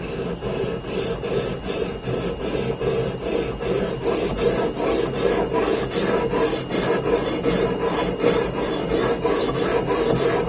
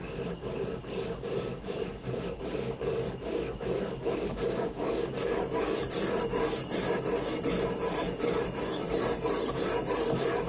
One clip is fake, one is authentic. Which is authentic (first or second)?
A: first